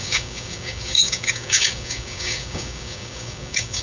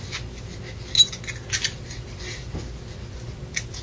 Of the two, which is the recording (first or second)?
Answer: second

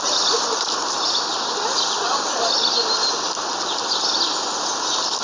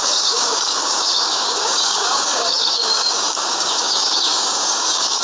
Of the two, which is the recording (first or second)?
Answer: first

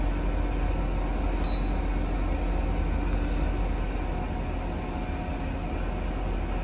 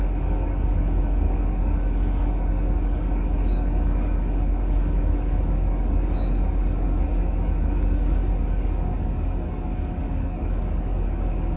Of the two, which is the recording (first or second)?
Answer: first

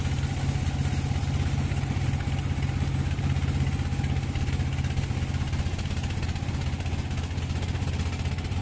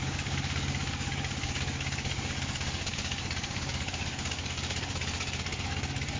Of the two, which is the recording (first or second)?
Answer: first